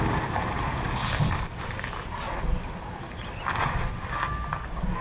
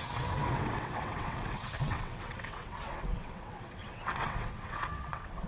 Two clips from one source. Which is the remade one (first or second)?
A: second